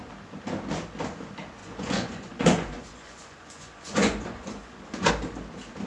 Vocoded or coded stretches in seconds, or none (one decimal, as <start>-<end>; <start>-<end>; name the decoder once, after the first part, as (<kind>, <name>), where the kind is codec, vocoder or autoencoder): 1.6-5.1 (vocoder, Vocos)